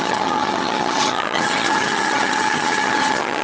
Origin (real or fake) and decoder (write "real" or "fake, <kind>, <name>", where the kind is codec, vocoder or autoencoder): fake, vocoder, HiFi-GAN